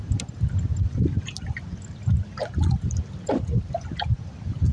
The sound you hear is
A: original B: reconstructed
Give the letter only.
A